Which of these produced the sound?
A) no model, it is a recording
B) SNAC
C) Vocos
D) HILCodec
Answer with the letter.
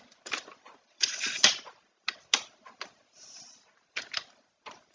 A